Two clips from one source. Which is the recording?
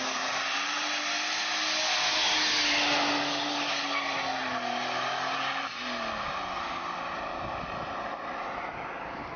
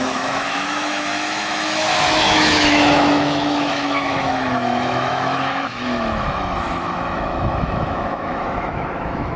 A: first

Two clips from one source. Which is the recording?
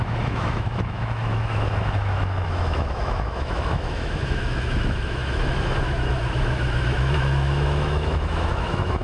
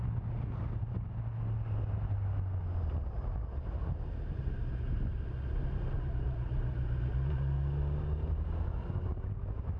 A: second